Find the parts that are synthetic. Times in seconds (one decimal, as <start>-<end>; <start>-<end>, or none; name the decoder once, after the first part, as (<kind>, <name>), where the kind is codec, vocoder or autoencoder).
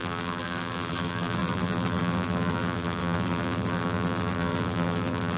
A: 0.0-5.4 (vocoder, BigVGAN v2)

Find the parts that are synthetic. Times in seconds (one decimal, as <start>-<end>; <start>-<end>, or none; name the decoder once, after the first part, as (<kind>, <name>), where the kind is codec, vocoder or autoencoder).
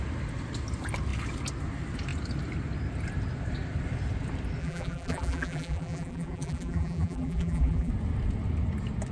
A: 4.6-7.9 (vocoder, BigVGAN v2)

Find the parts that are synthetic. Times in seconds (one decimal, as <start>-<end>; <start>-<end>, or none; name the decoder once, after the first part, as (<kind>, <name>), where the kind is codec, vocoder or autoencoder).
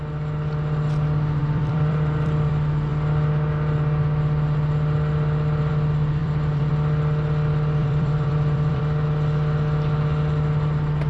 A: 1.4-2.5 (vocoder, BigVGAN v2); 6.2-6.7; 7.8-8.8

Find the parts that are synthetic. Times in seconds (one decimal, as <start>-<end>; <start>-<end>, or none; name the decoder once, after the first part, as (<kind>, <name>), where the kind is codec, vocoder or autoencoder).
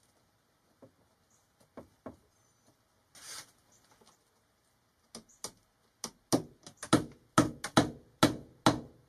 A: none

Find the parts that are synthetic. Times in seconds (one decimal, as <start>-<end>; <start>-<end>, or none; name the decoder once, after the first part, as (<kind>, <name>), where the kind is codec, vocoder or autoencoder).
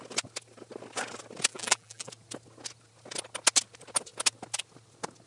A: 1.5-2.1 (vocoder, BigVGAN v2)